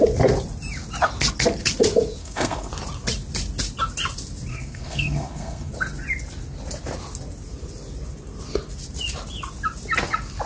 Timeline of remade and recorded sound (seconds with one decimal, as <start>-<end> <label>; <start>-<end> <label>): 0.0-2.2 recorded; 2.2-2.7 remade; 2.7-4.5 recorded; 4.5-5.7 remade; 5.7-10.5 recorded